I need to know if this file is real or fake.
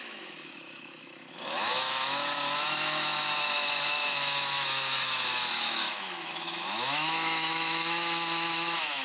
fake